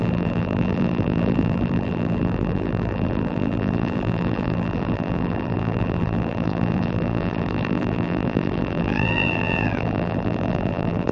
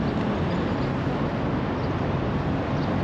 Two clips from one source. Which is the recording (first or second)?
second